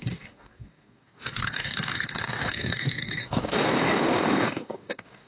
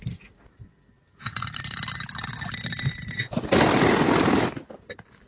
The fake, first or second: first